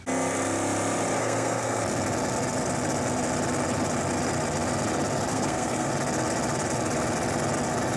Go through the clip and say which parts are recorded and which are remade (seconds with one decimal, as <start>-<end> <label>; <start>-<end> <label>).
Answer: 0.0-1.2 recorded; 1.2-1.8 remade; 1.8-5.3 recorded; 5.3-5.9 remade; 5.9-8.0 recorded